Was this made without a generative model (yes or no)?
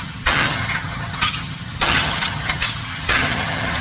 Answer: no